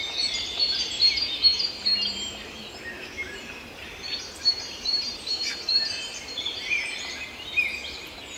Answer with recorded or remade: remade